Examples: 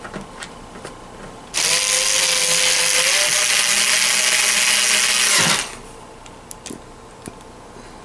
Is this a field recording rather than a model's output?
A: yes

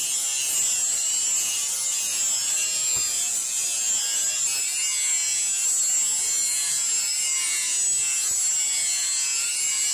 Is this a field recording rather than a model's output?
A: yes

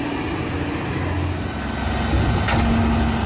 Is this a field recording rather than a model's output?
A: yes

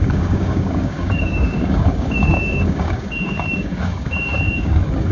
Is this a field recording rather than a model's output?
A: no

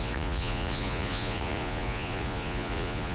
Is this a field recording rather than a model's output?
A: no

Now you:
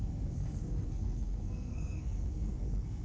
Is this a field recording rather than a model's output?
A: no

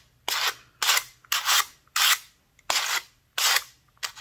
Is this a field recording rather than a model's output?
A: yes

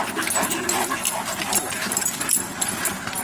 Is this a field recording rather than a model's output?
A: yes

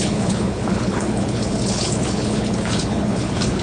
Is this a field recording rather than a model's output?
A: no